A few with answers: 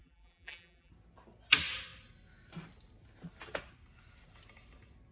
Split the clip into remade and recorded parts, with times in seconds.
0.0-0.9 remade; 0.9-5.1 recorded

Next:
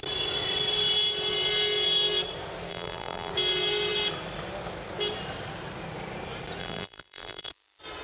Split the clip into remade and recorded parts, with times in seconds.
0.0-2.7 recorded; 2.7-3.3 remade; 3.3-6.6 recorded; 6.6-7.5 remade; 7.5-8.0 recorded

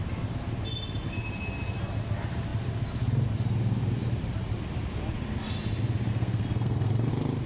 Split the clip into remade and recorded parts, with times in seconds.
0.0-6.1 recorded; 6.1-7.1 remade; 7.1-7.5 recorded

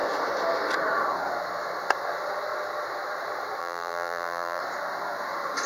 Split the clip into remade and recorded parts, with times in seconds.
0.0-3.6 recorded; 3.6-4.6 remade; 4.6-5.7 recorded

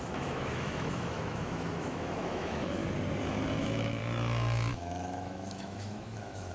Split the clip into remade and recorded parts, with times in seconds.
0.0-2.8 remade; 2.8-3.6 recorded; 3.6-4.0 remade; 4.0-4.7 recorded; 4.7-6.5 remade